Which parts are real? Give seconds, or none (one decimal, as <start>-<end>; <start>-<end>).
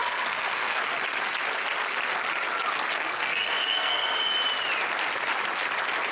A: 0.8-2.9; 4.3-6.1